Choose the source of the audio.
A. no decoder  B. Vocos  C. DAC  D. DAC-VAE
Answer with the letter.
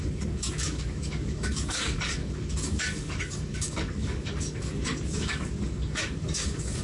C